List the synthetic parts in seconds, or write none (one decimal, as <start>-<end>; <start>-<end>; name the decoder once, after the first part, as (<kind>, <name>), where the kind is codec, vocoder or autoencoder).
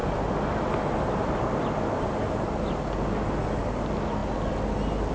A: none